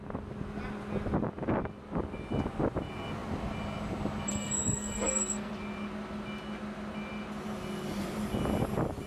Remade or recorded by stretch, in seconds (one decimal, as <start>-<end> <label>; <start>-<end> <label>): 0.0-4.3 recorded; 4.3-5.5 remade; 5.5-9.1 recorded